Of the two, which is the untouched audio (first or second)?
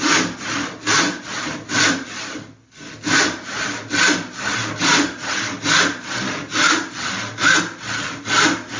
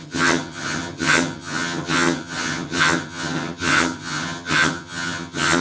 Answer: first